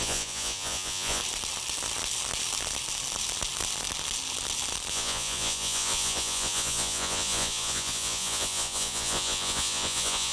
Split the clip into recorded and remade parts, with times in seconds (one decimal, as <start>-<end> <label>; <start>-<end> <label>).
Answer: 0.0-1.2 remade; 1.2-4.9 recorded; 4.9-10.3 remade